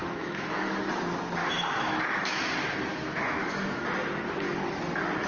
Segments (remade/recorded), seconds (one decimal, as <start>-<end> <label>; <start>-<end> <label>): 0.0-0.9 remade; 0.9-1.4 recorded; 1.4-2.4 remade; 2.4-2.9 recorded; 2.9-3.8 remade; 3.8-5.3 recorded